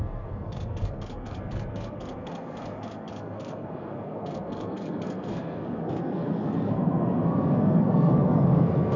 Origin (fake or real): fake